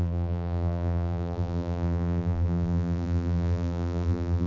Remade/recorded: remade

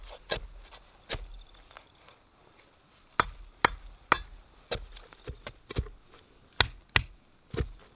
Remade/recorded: recorded